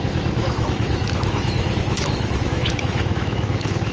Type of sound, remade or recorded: remade